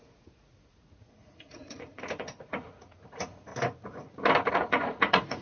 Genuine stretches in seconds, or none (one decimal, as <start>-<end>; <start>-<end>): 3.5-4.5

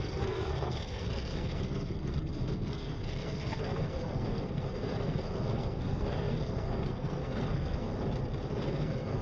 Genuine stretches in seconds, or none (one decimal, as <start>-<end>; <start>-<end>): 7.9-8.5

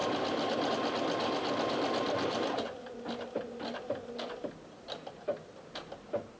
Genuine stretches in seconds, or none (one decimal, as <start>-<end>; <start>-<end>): 0.0-6.4

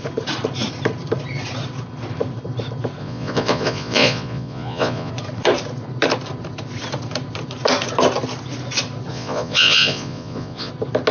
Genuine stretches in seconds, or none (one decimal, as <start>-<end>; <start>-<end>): 0.0-3.0; 5.1-9.1; 10.7-11.1

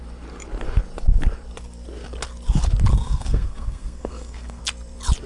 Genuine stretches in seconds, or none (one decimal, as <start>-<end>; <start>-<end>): 0.0-2.9; 4.6-5.3

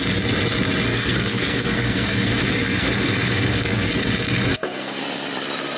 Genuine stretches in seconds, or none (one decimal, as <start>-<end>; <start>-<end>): 0.0-0.9; 3.9-4.5; 5.0-5.8